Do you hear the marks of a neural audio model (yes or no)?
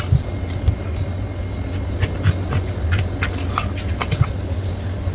no